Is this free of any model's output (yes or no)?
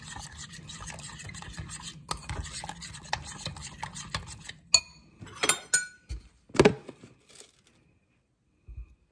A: yes